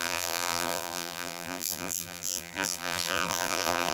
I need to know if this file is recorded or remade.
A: remade